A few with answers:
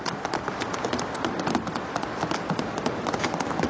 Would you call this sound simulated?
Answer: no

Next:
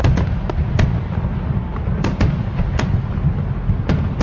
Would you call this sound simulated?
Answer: no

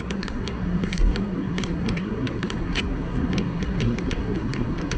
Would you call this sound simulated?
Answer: yes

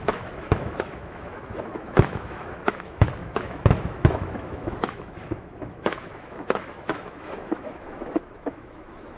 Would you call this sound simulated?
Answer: yes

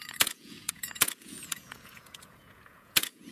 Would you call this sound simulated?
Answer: yes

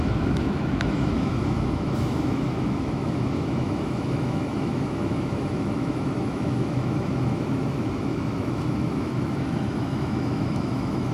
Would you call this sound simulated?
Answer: yes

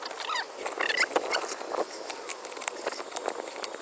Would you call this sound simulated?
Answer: no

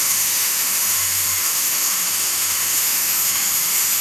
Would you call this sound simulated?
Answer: yes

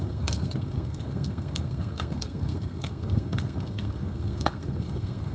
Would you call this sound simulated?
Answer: yes